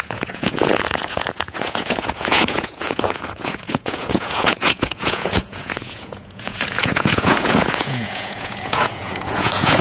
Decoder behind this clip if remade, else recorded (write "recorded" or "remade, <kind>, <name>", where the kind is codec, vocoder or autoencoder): remade, vocoder, Vocos